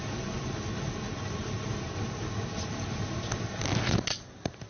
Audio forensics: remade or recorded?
recorded